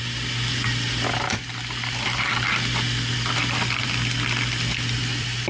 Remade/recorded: recorded